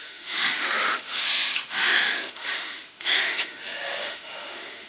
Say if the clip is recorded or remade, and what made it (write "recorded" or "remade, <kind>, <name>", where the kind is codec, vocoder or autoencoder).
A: remade, autoencoder, DAC-VAE